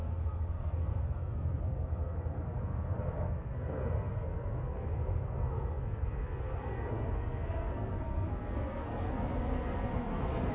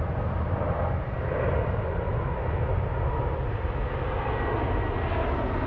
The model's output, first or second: first